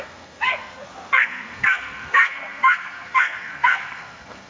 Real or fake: fake